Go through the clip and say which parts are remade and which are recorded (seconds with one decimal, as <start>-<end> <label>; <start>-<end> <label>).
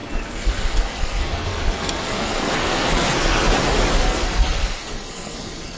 0.0-3.5 remade; 3.5-4.0 recorded; 4.0-5.8 remade